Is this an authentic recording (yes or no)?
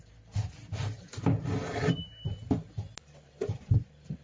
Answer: yes